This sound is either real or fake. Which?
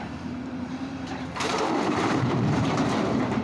fake